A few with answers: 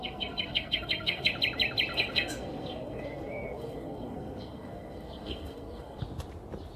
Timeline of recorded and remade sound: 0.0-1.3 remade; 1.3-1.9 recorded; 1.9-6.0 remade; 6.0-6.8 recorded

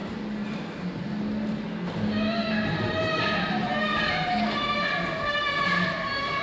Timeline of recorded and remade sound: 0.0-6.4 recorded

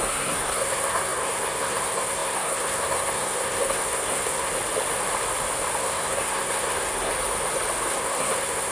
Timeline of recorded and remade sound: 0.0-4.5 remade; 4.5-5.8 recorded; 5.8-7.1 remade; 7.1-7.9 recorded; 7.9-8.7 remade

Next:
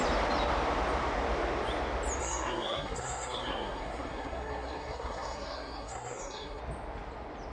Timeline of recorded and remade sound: 0.0-2.2 recorded; 2.2-6.6 remade; 6.6-7.5 recorded

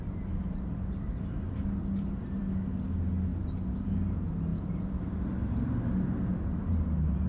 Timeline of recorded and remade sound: 0.0-7.3 recorded

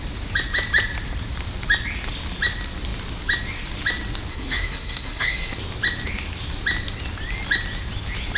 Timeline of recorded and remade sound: 0.0-4.3 recorded; 4.3-5.6 remade; 5.6-8.4 recorded